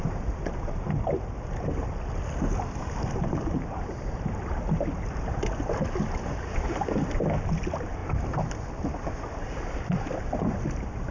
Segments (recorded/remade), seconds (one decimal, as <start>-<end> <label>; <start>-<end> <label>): 0.0-11.1 recorded